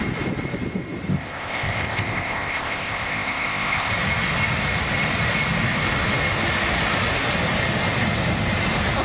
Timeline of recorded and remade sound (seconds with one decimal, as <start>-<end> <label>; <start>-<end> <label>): 0.0-1.1 recorded; 1.1-3.9 remade; 3.9-9.0 recorded